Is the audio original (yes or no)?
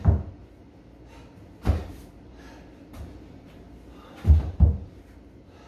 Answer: yes